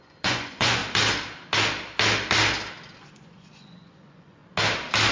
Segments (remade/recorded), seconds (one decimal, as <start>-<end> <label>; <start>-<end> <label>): 0.0-0.8 remade; 0.8-3.1 recorded; 3.1-4.4 remade; 4.4-5.1 recorded